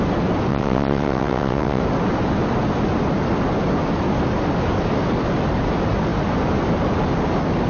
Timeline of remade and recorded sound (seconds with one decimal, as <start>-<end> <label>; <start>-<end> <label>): 0.0-0.5 recorded; 0.5-1.8 remade; 1.8-7.7 recorded